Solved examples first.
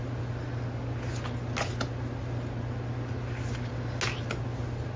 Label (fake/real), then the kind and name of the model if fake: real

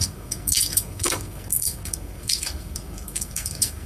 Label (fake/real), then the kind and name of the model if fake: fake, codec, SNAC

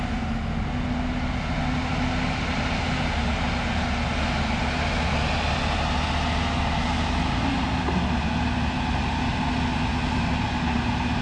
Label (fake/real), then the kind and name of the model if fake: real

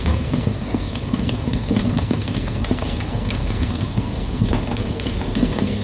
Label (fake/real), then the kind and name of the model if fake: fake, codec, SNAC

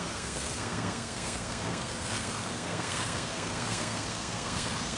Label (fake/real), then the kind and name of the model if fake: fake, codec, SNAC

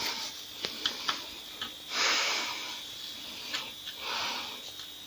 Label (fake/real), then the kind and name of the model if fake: real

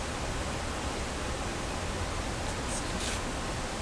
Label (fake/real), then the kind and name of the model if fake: real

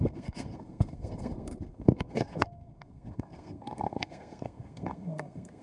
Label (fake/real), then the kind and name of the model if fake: fake, codec, SNAC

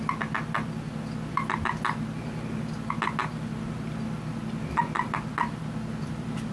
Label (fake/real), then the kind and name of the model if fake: real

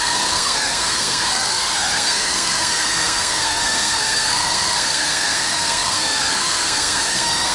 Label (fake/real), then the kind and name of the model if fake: fake, codec, SNAC